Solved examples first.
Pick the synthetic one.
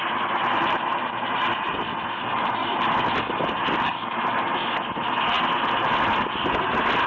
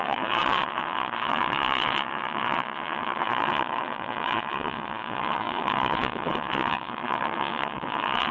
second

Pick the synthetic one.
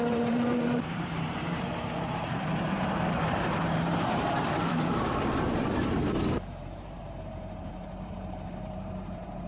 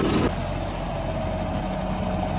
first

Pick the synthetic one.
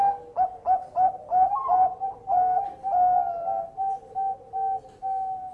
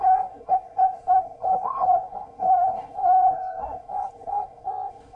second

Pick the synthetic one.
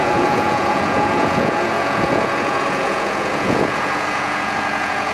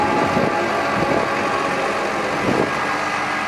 first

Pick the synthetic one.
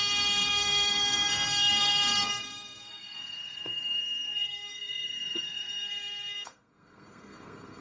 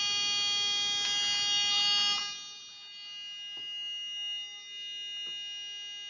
first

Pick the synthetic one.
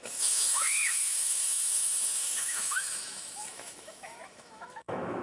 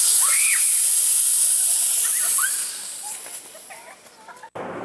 first